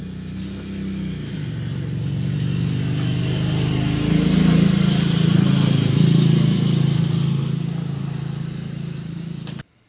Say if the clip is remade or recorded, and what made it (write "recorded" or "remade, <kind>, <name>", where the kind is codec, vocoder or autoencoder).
recorded